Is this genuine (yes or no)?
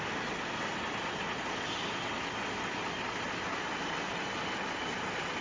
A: yes